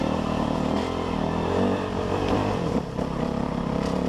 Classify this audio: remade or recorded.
recorded